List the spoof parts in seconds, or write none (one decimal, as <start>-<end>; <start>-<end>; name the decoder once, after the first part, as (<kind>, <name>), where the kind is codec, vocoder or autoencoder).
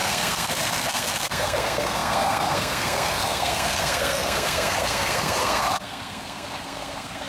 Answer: 0.0-7.3 (codec, SNAC)